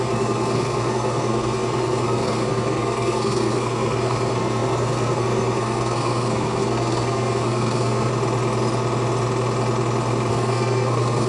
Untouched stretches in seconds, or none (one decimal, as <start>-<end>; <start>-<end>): 8.1-10.3